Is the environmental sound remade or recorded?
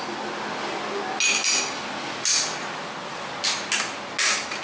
recorded